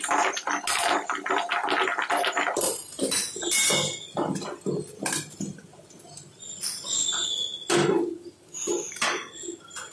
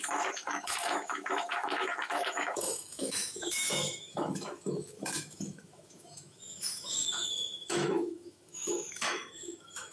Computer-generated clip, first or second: second